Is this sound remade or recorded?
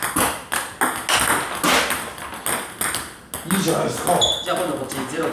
recorded